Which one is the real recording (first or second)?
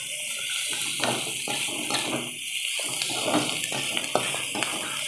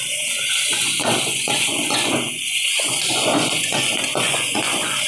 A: first